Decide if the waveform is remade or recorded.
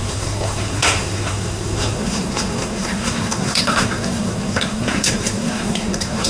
remade